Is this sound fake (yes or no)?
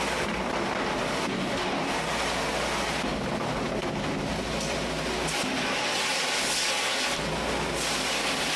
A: no